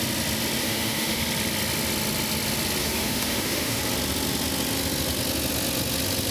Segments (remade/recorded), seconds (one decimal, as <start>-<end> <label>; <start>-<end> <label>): 0.0-0.6 recorded; 0.6-1.2 remade; 1.2-2.8 recorded; 2.8-3.8 remade; 3.8-6.3 recorded